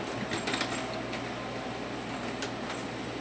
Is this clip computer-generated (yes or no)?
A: no